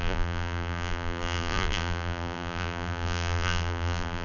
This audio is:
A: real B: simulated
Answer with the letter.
B